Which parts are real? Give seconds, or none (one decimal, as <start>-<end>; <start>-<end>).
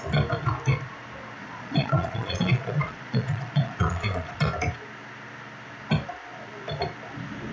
0.0-1.4; 4.4-7.5